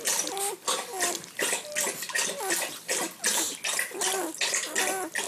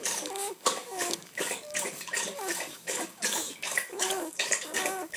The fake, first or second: second